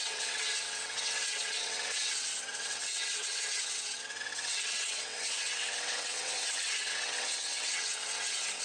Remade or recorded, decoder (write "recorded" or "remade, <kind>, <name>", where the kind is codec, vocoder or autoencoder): remade, vocoder, WaveNeXt